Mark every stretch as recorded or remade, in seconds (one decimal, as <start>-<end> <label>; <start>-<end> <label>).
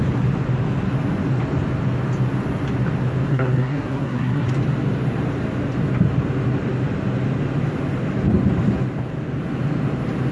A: 0.0-3.3 recorded; 3.3-4.5 remade; 4.5-10.3 recorded